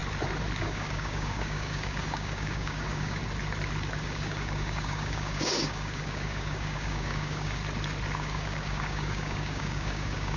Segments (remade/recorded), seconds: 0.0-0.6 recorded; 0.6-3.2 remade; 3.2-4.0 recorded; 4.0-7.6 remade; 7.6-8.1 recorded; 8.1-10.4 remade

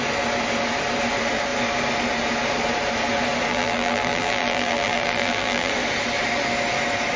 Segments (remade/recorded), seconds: 0.0-3.5 recorded; 3.5-5.7 remade; 5.7-7.2 recorded

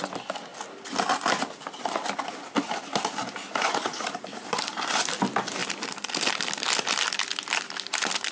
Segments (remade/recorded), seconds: 0.0-8.3 recorded

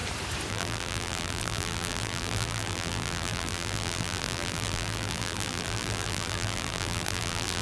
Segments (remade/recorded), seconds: 0.0-0.5 recorded; 0.5-7.6 remade

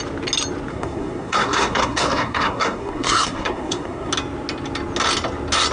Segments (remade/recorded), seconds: 0.0-0.7 recorded; 0.7-4.1 remade; 4.1-5.7 recorded

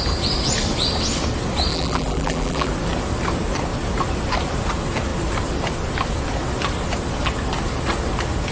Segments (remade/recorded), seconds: 0.0-1.7 recorded; 1.7-2.7 remade; 2.7-8.5 recorded

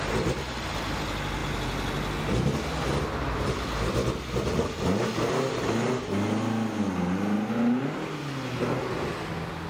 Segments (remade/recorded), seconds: 0.0-9.7 recorded